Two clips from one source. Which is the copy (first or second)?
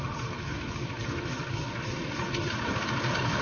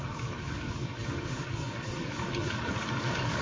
second